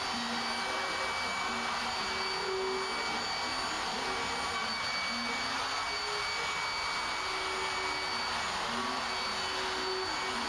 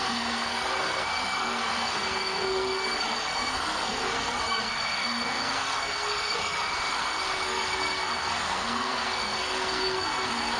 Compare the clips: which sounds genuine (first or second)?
first